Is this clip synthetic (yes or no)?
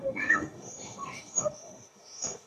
yes